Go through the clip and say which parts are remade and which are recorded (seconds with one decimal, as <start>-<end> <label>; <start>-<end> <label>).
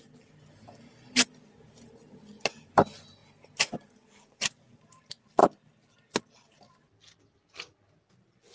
0.0-8.5 recorded